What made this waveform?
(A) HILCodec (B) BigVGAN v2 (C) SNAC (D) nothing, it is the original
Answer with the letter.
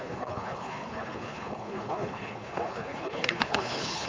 A